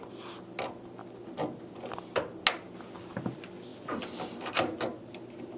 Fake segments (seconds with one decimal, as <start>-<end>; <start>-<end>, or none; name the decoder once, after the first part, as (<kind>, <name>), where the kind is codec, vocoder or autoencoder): none